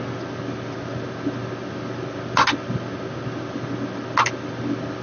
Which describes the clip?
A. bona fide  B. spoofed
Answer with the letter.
A